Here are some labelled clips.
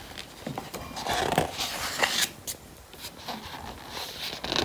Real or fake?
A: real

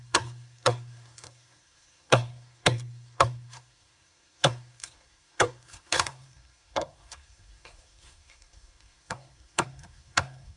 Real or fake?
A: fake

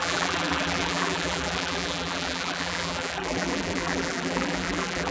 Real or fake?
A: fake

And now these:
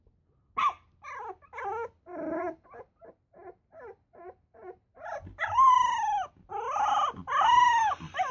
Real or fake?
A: real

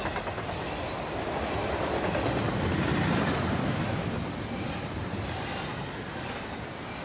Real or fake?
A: real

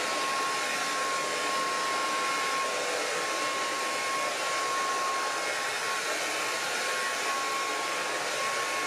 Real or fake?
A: real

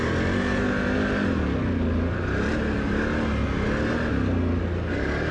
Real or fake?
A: real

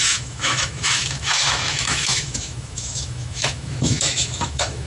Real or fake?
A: fake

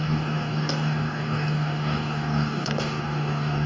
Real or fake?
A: fake